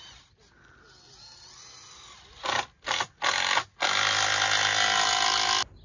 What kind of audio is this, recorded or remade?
recorded